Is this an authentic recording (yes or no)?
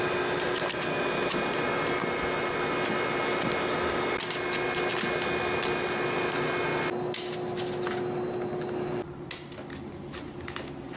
yes